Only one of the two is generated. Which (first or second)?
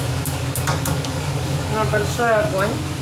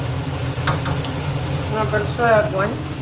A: first